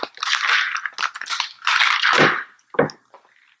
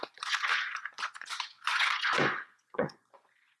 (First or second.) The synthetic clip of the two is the second